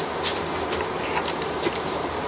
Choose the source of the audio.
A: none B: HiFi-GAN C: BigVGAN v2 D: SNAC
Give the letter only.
A